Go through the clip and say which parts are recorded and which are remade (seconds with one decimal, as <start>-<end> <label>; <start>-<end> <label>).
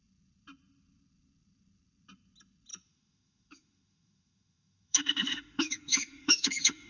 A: 0.0-2.7 recorded; 2.7-6.9 remade